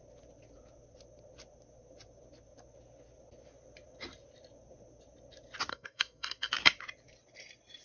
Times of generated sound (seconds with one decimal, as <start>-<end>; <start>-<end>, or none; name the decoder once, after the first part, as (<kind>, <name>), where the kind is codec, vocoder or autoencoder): 5.7-6.5 (codec, SNAC)